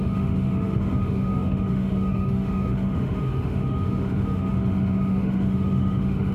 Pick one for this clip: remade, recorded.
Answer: remade